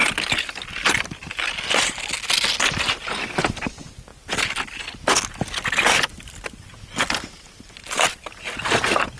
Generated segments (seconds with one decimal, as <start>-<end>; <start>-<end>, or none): none